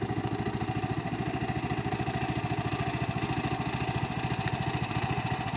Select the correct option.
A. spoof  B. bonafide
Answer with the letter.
B